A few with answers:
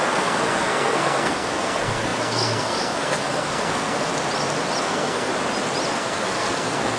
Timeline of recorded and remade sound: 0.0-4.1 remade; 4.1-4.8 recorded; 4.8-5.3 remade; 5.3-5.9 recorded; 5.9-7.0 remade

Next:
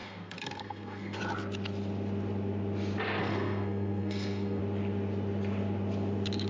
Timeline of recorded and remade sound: 0.0-1.2 remade; 1.2-3.3 recorded; 3.3-4.6 remade; 4.6-6.5 recorded

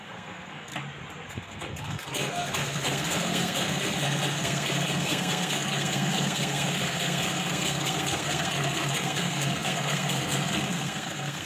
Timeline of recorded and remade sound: 0.0-0.7 remade; 0.7-1.3 recorded; 1.3-11.5 remade

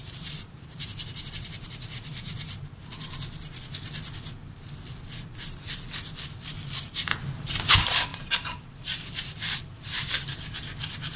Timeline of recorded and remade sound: 0.0-2.9 remade; 2.9-8.1 recorded; 8.1-10.1 remade; 10.1-11.2 recorded